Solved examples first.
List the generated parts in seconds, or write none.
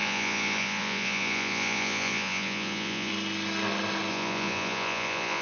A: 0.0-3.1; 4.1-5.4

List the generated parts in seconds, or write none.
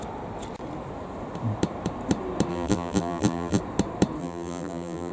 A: 2.5-3.6; 4.2-5.1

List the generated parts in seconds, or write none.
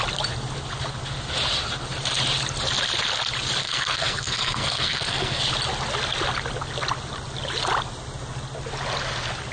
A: 3.6-5.4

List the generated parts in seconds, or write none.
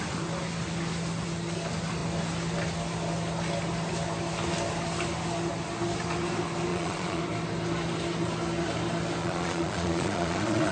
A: 6.7-7.2; 9.2-10.7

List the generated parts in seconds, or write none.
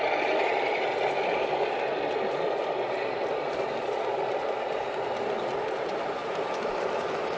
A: 6.2-7.4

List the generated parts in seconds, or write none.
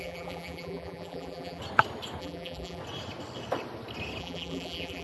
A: 0.0-1.6; 2.2-2.8; 4.2-5.0